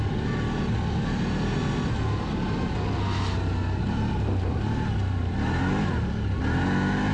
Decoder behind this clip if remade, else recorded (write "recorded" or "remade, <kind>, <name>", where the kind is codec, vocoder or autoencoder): recorded